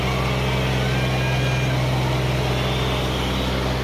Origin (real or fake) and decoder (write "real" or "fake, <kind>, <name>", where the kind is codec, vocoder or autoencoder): real